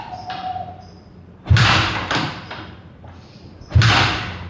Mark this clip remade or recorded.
remade